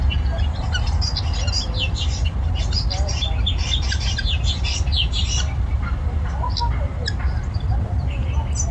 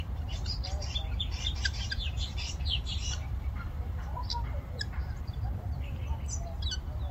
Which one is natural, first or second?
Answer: first